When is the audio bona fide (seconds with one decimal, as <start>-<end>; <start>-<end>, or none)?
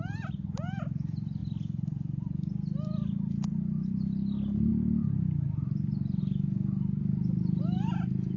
0.0-8.4